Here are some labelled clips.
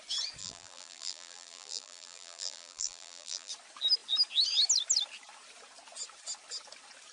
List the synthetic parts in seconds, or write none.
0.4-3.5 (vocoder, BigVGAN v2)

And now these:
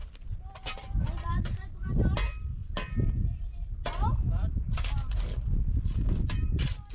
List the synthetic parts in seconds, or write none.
none

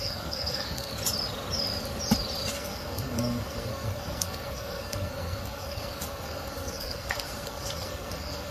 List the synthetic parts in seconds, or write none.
0.0-0.9 (codec, SNAC); 2.5-8.5

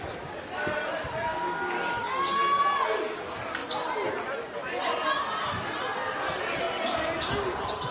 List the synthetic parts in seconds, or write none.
none